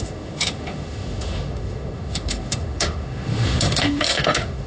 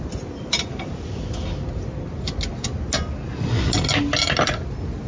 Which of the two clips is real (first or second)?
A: second